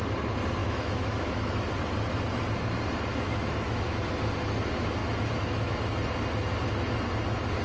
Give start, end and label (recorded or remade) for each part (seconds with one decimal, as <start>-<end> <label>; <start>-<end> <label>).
0.0-0.6 recorded; 0.6-1.7 remade; 1.7-3.1 recorded; 3.1-4.0 remade; 4.0-5.0 recorded; 5.0-5.7 remade; 5.7-7.6 recorded

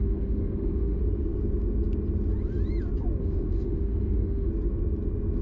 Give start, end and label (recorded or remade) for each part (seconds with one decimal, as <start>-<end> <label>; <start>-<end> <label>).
0.0-1.0 remade; 1.0-3.2 recorded; 3.2-4.5 remade; 4.5-5.4 recorded